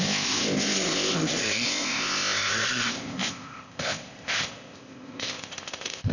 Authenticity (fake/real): fake